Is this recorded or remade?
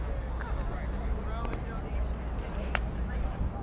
recorded